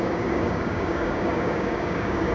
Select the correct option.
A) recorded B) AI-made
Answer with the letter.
B